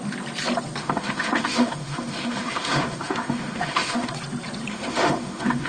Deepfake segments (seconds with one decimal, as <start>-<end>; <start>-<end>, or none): 0.8-4.1; 4.7-5.7